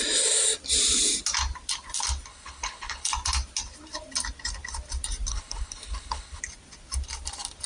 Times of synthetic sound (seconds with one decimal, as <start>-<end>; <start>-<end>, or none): 2.3-3.1; 5.3-6.4